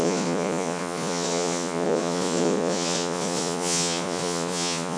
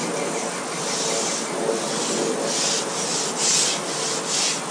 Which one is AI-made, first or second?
first